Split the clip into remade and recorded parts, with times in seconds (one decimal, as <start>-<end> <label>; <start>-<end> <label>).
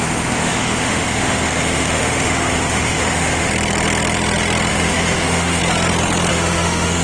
0.0-3.5 remade; 3.5-4.7 recorded; 4.7-5.6 remade; 5.6-6.3 recorded; 6.3-7.0 remade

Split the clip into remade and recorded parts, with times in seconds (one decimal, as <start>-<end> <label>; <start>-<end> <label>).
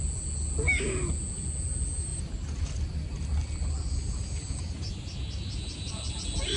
0.0-6.6 recorded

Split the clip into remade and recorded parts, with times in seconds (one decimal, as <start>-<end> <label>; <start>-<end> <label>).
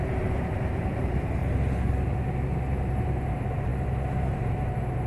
0.0-1.4 remade; 1.4-3.0 recorded; 3.0-3.7 remade; 3.7-4.3 recorded; 4.3-5.1 remade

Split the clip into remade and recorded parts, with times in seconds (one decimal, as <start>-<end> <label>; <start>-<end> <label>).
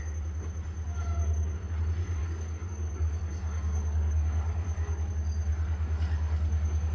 0.0-2.2 recorded; 2.2-5.1 remade; 5.1-5.5 recorded; 5.5-6.9 remade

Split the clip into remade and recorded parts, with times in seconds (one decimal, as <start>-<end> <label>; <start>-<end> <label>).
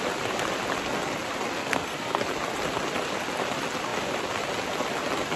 0.0-1.6 recorded; 1.6-2.2 remade; 2.2-5.4 recorded